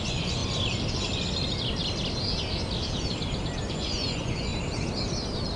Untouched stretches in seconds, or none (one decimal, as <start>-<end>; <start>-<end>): 0.4-3.7; 4.5-5.6